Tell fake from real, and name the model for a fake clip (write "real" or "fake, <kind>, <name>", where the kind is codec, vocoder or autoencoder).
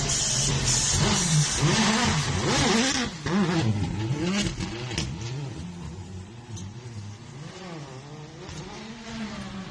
real